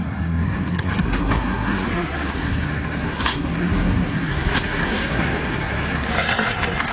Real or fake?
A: fake